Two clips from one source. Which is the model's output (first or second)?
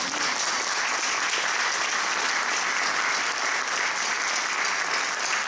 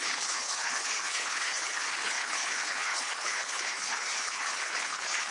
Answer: second